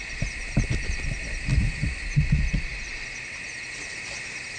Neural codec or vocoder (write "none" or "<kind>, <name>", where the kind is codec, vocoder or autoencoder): none